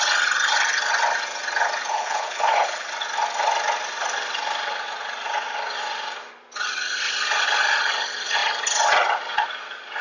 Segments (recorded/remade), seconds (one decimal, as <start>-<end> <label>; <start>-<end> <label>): 0.0-1.9 recorded; 1.9-2.9 remade; 2.9-10.0 recorded